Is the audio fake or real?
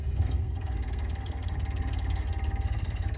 fake